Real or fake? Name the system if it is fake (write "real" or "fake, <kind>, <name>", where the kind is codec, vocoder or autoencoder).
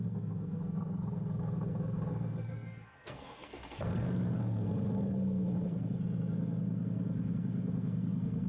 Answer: fake, codec, SNAC